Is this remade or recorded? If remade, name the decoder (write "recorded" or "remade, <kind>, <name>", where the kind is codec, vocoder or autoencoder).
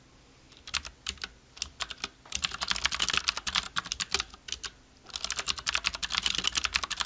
recorded